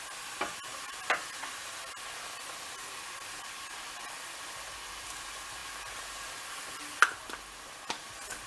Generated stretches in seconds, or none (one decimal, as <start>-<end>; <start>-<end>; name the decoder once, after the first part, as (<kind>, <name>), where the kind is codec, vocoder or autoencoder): none